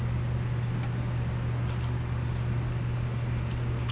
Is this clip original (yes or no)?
yes